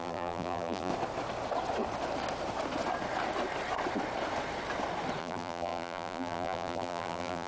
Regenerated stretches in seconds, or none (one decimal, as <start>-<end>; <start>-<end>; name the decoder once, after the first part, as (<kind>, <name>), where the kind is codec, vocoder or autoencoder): 0.0-0.9 (vocoder, BigVGAN v2); 5.2-7.5